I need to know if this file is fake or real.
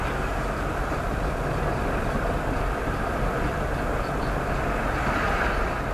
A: real